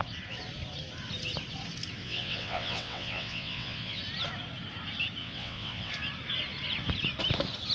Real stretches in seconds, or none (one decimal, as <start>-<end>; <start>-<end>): 0.0-2.0; 4.0-5.2; 5.9-7.7